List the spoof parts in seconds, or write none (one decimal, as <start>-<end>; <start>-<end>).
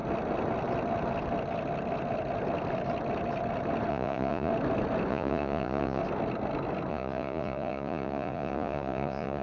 3.9-4.5; 5.1-6.0; 6.9-9.4